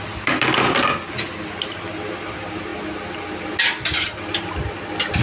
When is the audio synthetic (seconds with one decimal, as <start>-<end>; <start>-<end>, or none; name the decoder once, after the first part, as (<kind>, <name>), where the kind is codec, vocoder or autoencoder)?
none